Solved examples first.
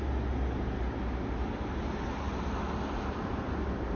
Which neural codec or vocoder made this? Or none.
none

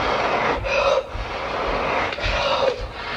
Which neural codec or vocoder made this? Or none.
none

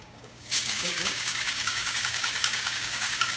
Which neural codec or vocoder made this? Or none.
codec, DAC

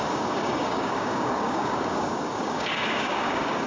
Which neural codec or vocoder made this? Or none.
codec, DAC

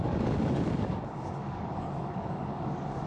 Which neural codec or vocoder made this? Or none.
codec, DAC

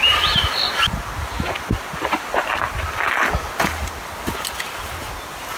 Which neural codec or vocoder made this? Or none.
none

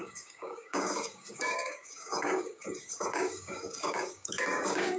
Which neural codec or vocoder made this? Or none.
codec, DAC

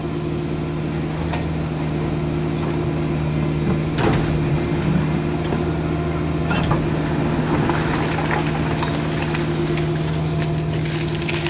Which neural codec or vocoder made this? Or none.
none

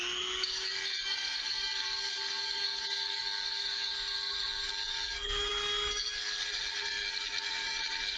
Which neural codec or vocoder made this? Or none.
codec, DAC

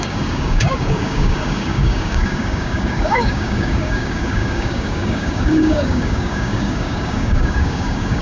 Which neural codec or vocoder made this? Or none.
codec, DAC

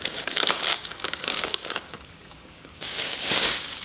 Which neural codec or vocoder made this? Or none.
codec, DAC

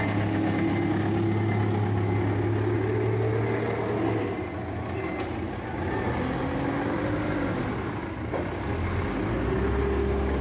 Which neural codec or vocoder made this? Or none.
none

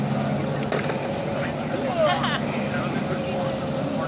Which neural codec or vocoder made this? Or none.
none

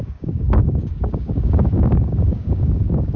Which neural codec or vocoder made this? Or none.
codec, DAC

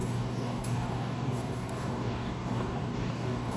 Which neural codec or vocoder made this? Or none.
codec, DAC